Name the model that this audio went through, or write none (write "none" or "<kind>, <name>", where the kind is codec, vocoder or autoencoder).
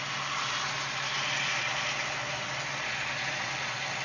none